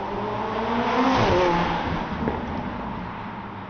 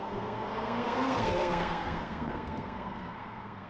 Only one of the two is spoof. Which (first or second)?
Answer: second